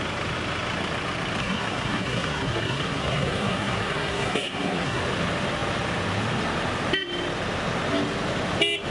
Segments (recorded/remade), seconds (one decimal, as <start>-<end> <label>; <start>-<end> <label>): 0.0-1.4 recorded; 1.4-5.0 remade; 5.0-8.9 recorded